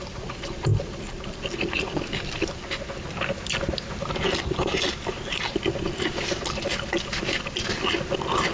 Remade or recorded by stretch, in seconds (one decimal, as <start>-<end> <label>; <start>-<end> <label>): 0.0-0.7 recorded; 0.7-1.6 remade; 1.6-8.5 recorded